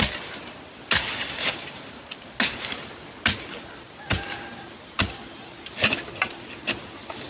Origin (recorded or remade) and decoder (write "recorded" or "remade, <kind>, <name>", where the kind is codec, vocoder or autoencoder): recorded